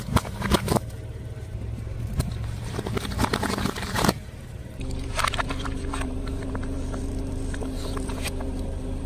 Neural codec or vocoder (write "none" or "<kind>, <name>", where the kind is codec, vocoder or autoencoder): vocoder, BigVGAN v2